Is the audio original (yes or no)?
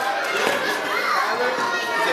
yes